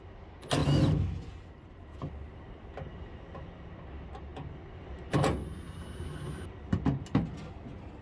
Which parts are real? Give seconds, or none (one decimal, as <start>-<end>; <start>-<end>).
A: 0.0-8.0